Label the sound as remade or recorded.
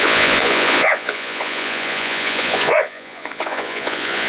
remade